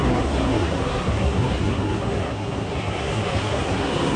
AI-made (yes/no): yes